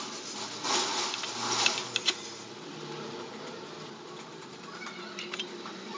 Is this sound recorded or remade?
recorded